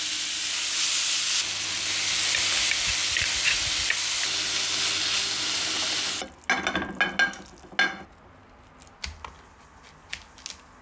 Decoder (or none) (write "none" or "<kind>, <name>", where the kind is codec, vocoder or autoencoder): none